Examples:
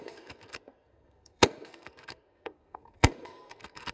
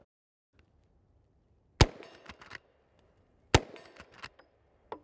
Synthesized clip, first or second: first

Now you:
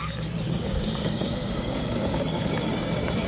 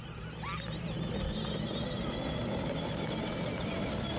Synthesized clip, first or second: first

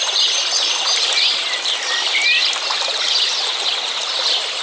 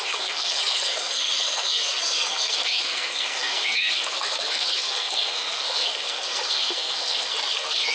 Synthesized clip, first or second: second